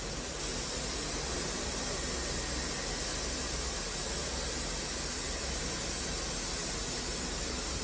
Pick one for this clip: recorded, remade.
recorded